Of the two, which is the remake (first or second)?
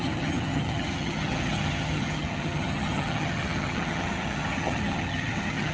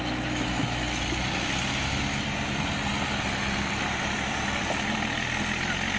first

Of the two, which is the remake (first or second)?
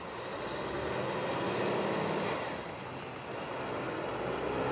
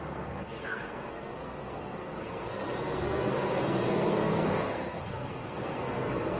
second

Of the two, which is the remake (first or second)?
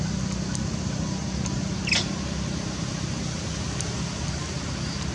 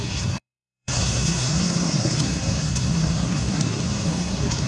second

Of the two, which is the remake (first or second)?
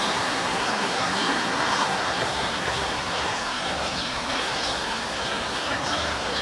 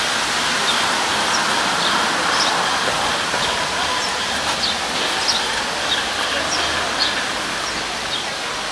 first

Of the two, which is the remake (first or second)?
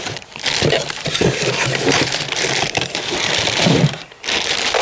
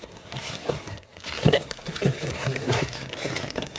second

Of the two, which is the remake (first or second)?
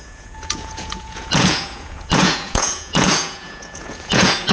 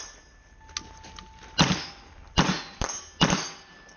first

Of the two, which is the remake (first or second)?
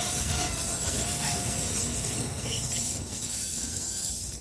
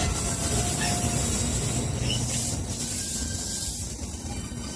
first